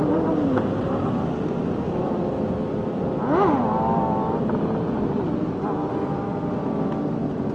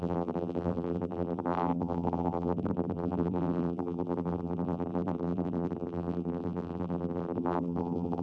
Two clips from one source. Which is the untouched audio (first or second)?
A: first